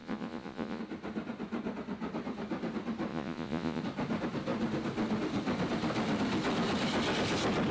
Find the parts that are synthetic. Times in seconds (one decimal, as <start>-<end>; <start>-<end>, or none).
0.0-0.8; 3.1-3.8

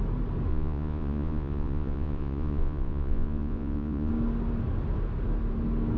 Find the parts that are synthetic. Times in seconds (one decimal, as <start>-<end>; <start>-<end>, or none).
0.5-4.1

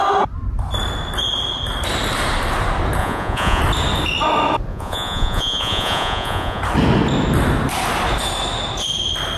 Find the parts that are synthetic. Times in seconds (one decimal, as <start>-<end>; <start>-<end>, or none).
3.0-3.6; 4.7-6.6